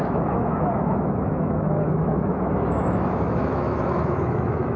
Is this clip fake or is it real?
fake